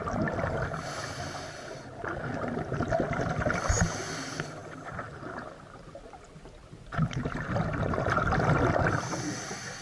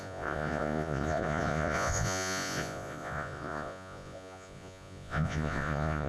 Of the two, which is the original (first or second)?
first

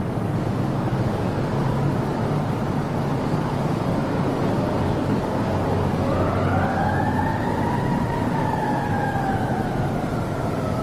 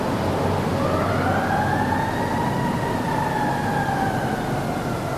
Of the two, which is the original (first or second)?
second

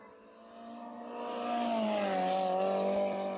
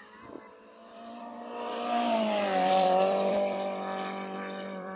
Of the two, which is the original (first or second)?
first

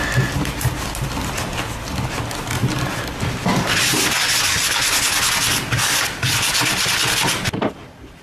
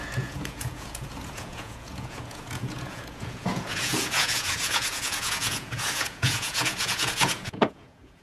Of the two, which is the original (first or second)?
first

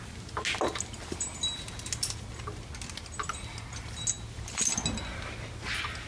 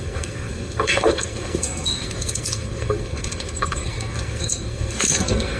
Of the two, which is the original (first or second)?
first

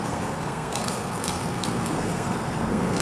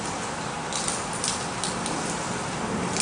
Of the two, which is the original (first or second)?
second